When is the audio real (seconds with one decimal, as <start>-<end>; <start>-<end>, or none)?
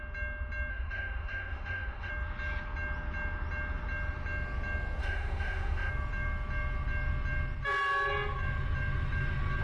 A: 0.0-0.7; 2.1-5.0; 5.9-9.6